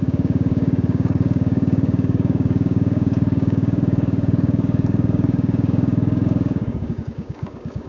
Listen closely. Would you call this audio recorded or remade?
remade